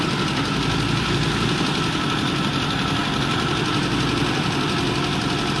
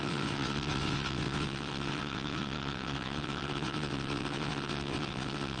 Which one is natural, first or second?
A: first